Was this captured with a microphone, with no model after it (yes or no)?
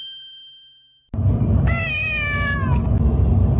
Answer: yes